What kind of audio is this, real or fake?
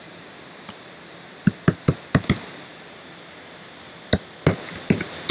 real